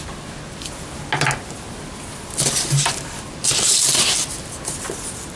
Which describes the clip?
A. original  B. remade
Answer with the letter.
A